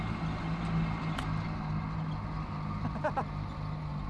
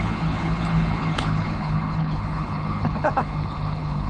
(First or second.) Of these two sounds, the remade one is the second